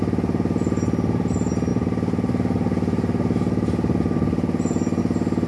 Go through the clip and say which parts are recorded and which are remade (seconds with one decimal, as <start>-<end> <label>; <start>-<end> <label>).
0.0-5.5 recorded